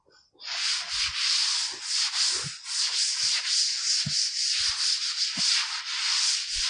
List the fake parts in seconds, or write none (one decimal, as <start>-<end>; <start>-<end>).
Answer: none